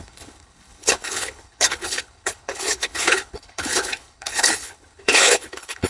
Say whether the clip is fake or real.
fake